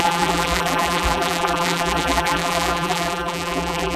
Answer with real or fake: fake